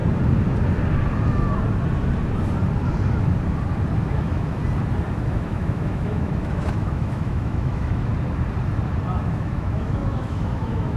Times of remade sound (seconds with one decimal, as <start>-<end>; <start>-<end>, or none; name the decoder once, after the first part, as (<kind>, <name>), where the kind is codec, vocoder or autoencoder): 4.0-4.6 (autoencoder, DAC-VAE); 5.2-8.1; 9.2-11.0